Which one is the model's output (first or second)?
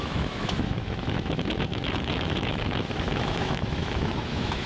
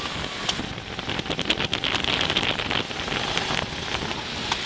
first